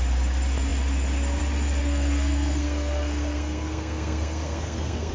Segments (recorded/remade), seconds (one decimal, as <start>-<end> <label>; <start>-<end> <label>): 0.0-1.8 recorded; 1.8-5.1 remade